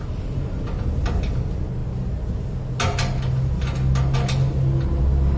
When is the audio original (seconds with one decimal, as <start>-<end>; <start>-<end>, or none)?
0.0-5.4